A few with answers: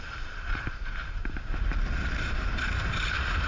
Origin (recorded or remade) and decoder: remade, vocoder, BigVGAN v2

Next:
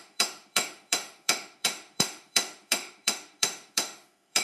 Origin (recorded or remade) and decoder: remade, autoencoder, DAC-VAE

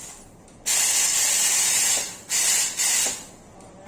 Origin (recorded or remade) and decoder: recorded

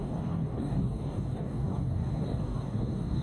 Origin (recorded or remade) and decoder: remade, codec, DAC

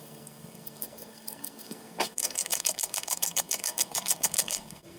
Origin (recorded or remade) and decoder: remade, codec, SNAC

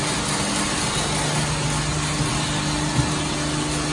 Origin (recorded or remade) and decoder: recorded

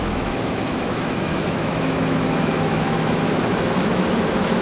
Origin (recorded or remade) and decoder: remade, autoencoder, DAC-VAE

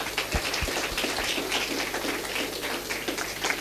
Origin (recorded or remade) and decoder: recorded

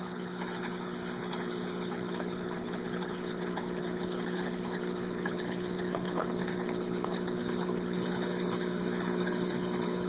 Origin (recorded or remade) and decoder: remade, codec, HILCodec